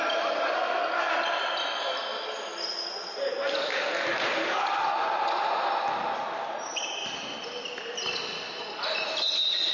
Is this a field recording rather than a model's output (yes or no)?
yes